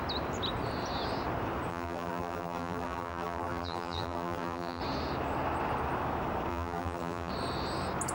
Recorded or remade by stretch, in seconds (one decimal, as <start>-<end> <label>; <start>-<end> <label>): 0.0-1.7 recorded; 1.7-4.8 remade; 4.8-6.5 recorded; 6.5-7.3 remade; 7.3-8.1 recorded